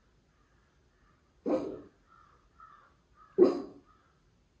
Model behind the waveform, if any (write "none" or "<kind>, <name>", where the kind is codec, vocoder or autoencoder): none